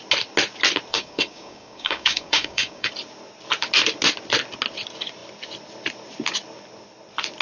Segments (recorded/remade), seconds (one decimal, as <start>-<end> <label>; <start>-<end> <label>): 0.0-0.9 recorded; 0.9-2.9 remade; 2.9-7.4 recorded